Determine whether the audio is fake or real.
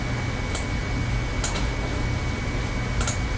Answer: real